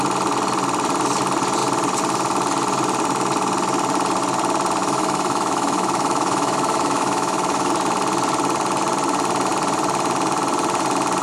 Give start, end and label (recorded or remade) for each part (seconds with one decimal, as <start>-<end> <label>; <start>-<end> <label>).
0.0-4.8 recorded; 4.8-7.7 remade; 7.7-11.2 recorded